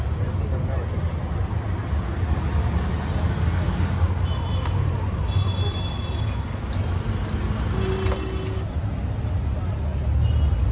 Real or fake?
real